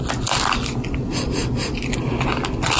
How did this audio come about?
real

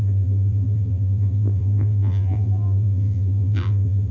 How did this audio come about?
fake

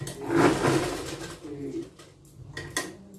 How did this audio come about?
real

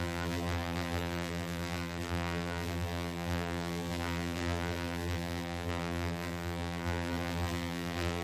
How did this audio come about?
fake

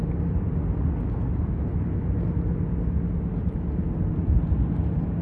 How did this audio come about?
real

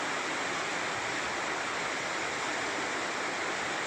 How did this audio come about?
real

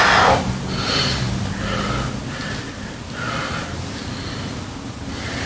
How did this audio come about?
real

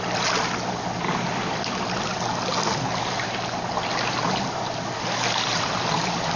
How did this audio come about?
fake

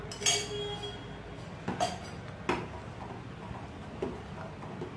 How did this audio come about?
real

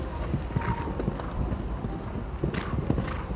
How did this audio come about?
real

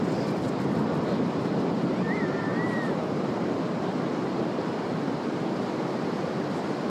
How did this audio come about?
fake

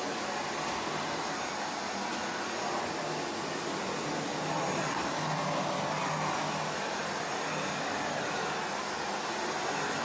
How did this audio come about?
real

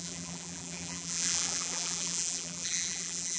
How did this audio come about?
fake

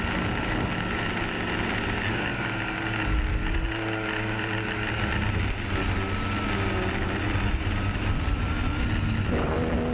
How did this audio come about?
real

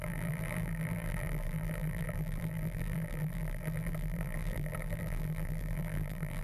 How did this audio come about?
fake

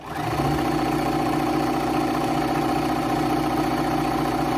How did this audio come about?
real